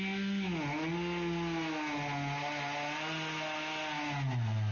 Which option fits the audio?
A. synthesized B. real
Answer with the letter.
B